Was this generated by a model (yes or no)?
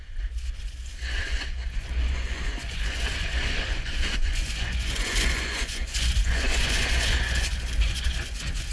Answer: yes